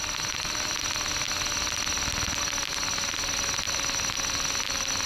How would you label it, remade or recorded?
recorded